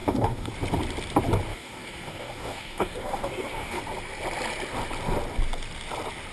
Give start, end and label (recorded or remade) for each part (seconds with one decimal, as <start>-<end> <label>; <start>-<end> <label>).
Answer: 0.0-0.5 remade; 0.5-1.5 recorded; 1.5-3.8 remade; 3.8-6.3 recorded